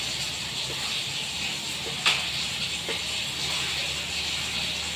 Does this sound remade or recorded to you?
recorded